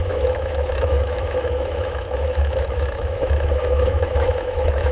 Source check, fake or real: fake